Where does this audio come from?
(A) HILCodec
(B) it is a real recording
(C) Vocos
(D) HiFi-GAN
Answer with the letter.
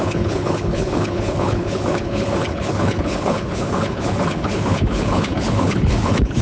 A